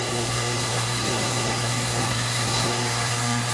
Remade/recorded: remade